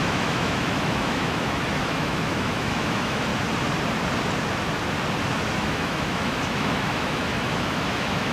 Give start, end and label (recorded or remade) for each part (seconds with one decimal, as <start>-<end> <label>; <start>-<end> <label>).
0.0-3.3 remade; 3.3-5.6 recorded; 5.6-8.3 remade